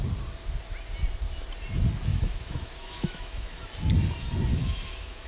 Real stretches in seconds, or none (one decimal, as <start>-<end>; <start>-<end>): 0.0-2.1; 3.6-4.5